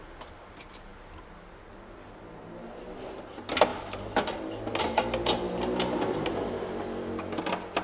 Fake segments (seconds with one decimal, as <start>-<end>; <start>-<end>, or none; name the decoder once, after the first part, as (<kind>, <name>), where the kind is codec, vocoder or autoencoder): none